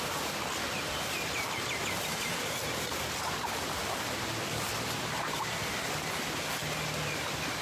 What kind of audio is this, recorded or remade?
recorded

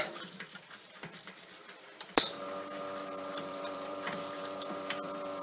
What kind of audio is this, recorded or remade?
remade